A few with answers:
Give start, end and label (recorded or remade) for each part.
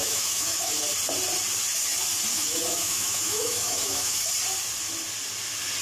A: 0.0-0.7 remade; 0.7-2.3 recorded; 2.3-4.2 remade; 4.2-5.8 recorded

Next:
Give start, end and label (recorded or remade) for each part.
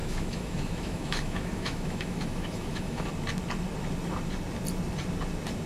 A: 0.0-3.1 remade; 3.1-5.7 recorded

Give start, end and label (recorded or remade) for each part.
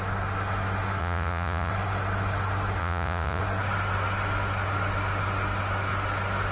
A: 0.0-1.0 recorded; 1.0-1.7 remade; 1.7-2.8 recorded; 2.8-3.4 remade; 3.4-6.5 recorded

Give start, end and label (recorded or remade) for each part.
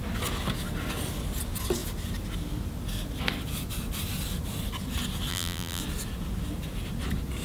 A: 0.0-5.3 recorded; 5.3-5.8 remade; 5.8-7.4 recorded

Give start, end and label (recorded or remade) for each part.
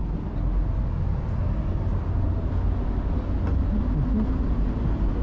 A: 0.0-5.2 recorded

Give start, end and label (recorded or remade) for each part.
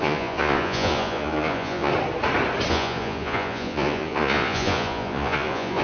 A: 0.0-1.9 remade; 1.9-2.7 recorded; 2.7-5.8 remade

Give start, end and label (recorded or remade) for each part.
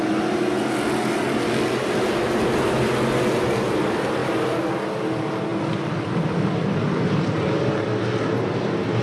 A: 0.0-5.5 recorded; 5.5-7.7 remade; 7.7-9.0 recorded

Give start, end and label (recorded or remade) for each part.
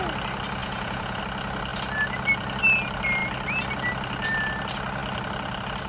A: 0.0-0.6 recorded; 0.6-1.2 remade; 1.2-5.9 recorded